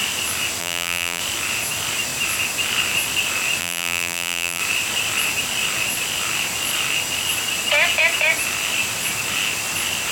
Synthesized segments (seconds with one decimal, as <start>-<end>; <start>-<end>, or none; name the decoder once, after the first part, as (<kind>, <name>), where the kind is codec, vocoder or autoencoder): 0.6-1.2 (vocoder, BigVGAN v2); 3.6-4.6